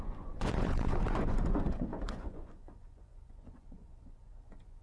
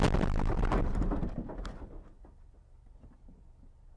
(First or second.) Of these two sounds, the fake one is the first